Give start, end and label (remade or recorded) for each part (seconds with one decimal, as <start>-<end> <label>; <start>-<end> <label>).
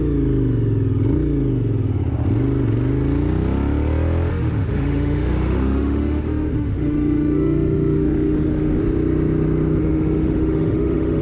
0.0-4.3 recorded; 4.3-8.8 remade; 8.8-9.8 recorded; 9.8-11.2 remade